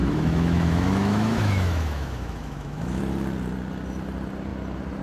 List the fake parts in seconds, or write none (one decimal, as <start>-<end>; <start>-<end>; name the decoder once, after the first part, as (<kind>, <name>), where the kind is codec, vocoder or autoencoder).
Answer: 0.0-3.0 (autoencoder, DAC-VAE)